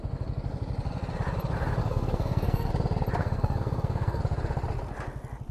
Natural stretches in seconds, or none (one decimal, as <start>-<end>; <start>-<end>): 0.0-1.8; 2.7-3.2; 4.2-5.5